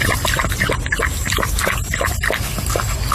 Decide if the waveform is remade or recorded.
recorded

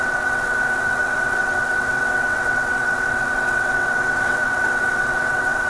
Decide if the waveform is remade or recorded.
remade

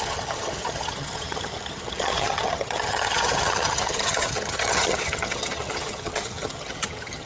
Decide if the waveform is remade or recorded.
remade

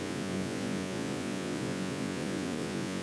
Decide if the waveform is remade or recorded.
remade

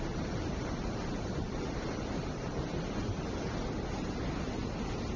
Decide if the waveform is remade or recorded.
recorded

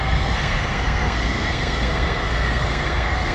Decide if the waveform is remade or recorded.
remade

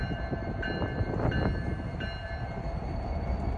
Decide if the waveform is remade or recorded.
recorded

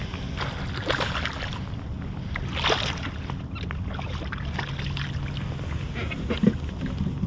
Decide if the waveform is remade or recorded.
recorded